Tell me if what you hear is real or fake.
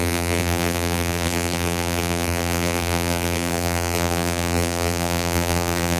fake